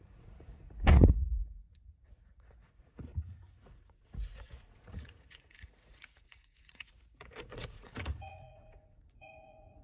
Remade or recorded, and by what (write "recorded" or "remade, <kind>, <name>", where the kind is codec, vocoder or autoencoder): remade, vocoder, Vocos